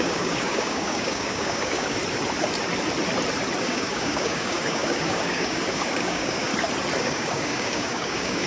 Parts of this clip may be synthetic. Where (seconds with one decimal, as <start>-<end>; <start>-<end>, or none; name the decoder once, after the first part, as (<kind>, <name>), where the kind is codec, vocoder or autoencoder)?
0.0-2.0 (codec, DAC); 3.6-6.5; 7.0-8.5